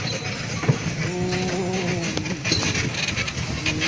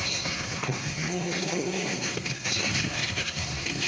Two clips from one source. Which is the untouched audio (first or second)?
first